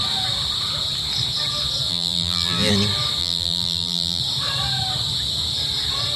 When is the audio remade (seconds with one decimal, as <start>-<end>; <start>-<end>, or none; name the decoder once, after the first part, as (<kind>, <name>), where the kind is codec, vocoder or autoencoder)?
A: 1.9-2.7 (vocoder, BigVGAN v2); 3.2-4.2